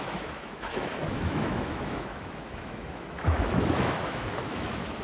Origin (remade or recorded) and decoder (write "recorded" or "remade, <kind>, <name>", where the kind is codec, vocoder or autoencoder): remade, autoencoder, DAC-VAE